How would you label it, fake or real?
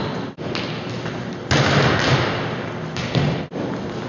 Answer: real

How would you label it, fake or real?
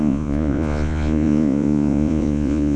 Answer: fake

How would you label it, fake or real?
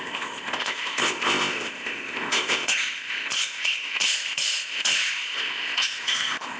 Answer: fake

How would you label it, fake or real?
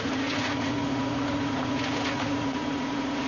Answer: fake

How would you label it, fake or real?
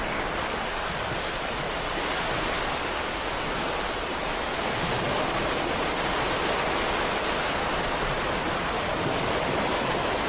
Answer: real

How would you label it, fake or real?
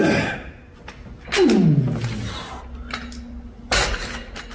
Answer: real